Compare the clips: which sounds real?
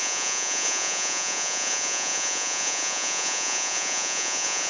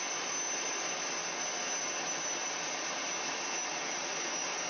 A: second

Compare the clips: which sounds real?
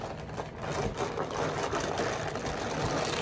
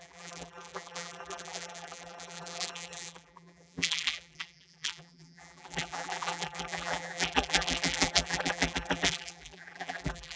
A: first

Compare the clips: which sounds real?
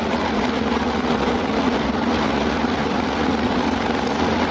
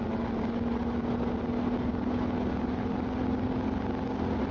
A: second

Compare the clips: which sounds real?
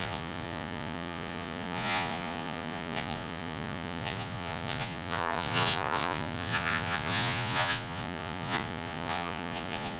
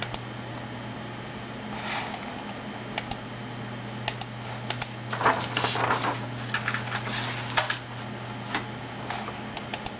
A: second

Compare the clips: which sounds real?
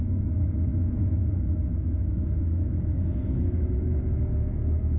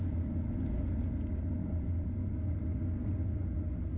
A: second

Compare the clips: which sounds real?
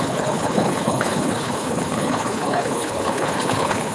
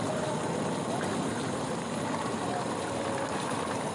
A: second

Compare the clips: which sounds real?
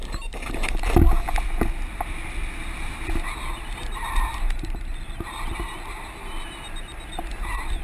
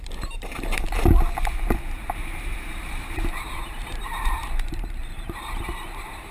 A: first